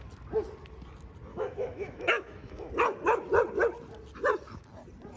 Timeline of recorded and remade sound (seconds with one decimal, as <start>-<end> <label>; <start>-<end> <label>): 0.0-1.3 recorded; 1.3-2.7 remade; 2.7-5.2 recorded